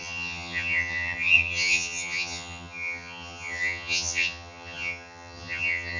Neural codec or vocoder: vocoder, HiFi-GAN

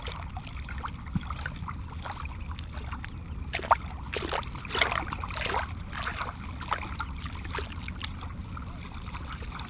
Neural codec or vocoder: none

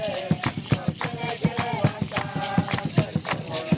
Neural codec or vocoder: none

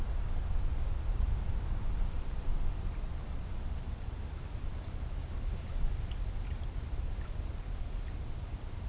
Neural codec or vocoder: none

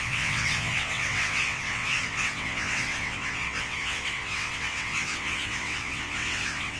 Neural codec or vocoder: vocoder, WaveNeXt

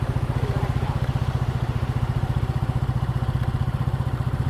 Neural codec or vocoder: vocoder, BigVGAN v2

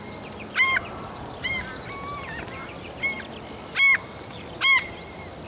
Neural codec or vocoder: none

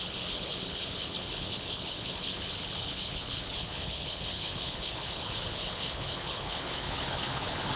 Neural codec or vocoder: codec, HILCodec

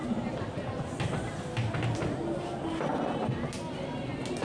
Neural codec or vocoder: none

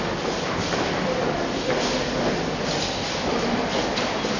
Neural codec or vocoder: none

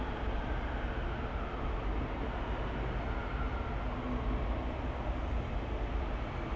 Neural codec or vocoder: none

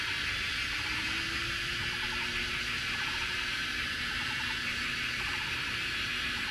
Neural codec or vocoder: none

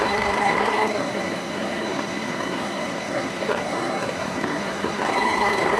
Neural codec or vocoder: codec, SNAC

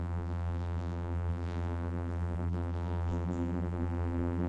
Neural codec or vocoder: vocoder, BigVGAN v2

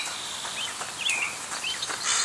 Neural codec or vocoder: none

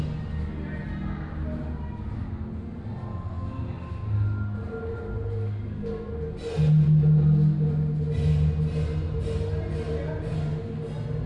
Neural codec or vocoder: none